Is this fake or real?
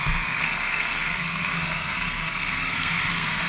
fake